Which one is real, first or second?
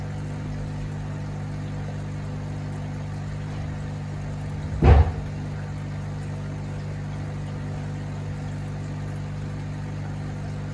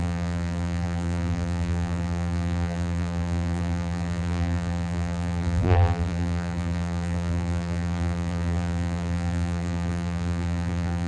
first